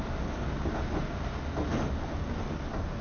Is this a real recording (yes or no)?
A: yes